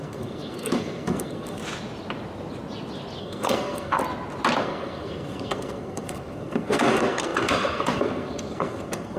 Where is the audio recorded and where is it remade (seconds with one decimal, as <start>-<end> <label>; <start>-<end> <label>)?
0.0-1.6 remade; 1.6-3.2 recorded; 3.2-4.0 remade; 4.0-4.6 recorded; 4.6-9.2 remade